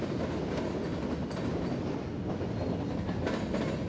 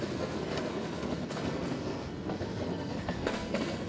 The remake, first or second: second